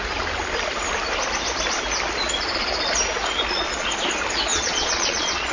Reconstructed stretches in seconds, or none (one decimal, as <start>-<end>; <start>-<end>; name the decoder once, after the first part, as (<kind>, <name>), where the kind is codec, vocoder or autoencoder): 4.5-5.5 (vocoder, Vocos)

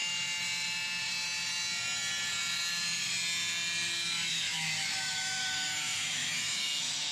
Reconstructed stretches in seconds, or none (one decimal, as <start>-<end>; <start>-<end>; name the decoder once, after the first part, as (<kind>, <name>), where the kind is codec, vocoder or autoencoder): 4.3-7.1 (autoencoder, DAC-VAE)